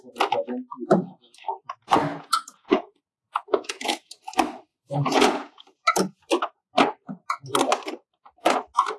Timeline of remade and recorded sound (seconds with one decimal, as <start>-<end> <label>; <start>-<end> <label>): 0.0-2.1 recorded; 2.1-4.1 remade; 4.1-4.7 recorded; 4.7-5.6 remade; 5.6-9.0 recorded